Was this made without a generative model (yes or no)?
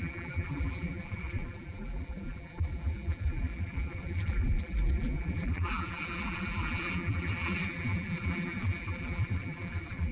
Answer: no